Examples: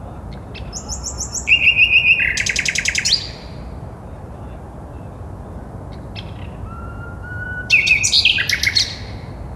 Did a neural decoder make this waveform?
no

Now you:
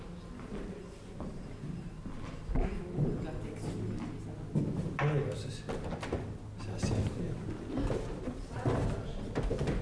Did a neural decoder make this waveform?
no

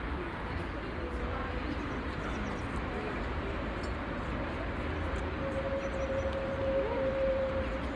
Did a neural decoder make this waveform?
no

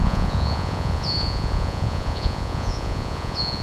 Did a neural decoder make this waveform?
yes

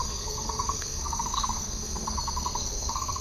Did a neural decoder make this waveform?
yes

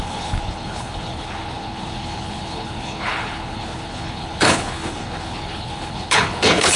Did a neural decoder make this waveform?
yes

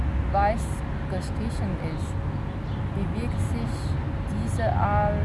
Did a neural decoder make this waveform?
no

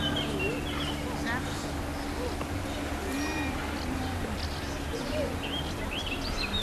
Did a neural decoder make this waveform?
no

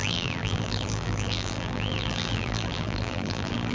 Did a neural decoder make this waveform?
yes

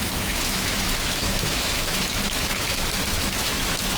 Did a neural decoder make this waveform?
yes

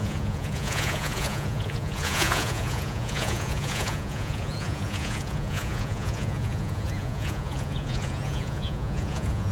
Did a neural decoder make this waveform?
yes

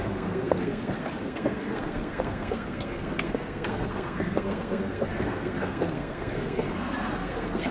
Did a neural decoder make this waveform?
yes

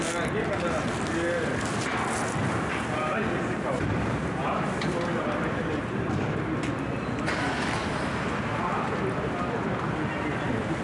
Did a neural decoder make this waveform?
no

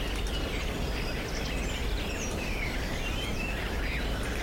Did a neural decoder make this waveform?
no